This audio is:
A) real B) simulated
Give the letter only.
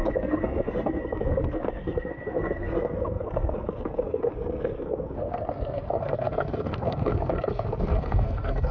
B